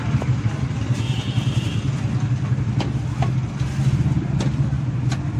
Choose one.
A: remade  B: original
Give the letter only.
B